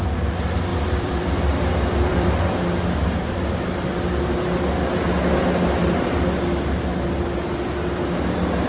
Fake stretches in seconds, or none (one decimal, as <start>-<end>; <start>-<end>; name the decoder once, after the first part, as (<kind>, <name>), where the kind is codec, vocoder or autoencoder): 0.7-3.1 (vocoder, BigVGAN v2)